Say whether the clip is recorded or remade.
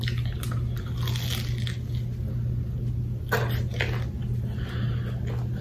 recorded